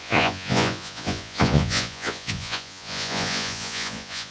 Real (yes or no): no